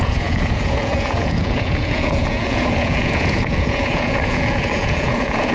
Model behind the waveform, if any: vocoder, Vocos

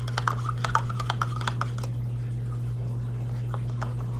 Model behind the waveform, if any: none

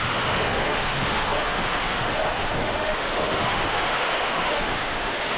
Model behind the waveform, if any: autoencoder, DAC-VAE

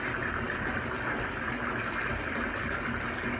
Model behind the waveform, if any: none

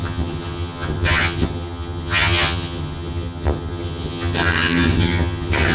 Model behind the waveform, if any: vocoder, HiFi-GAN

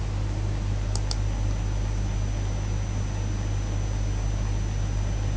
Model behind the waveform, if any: none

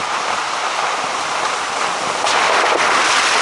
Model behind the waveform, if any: none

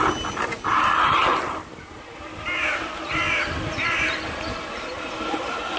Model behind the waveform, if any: none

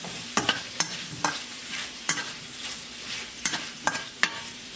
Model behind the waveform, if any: vocoder, BigVGAN v2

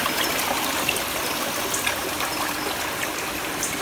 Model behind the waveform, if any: none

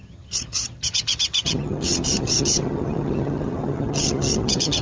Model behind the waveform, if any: vocoder, HiFi-GAN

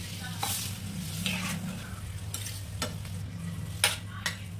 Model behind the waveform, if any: none